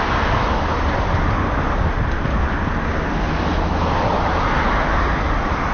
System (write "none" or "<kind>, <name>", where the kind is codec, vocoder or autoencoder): none